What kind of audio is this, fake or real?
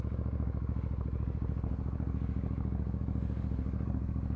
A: fake